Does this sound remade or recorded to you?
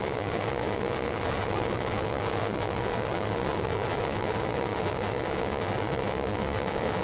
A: remade